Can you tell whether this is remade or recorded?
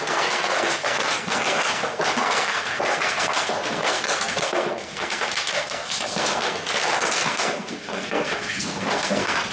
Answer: remade